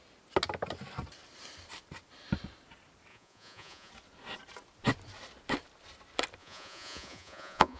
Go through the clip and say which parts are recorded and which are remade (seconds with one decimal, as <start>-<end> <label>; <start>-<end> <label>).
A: 0.0-3.1 recorded; 3.1-3.9 remade; 3.9-6.4 recorded; 6.4-7.8 remade